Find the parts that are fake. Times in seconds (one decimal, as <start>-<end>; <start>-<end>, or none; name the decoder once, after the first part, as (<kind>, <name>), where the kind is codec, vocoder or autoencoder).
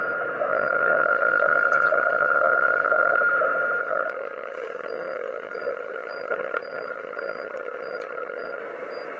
0.5-3.2 (vocoder, HiFi-GAN); 3.8-8.6